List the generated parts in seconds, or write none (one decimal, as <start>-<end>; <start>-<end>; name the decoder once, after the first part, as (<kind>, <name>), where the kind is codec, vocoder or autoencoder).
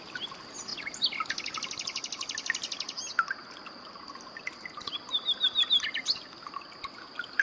none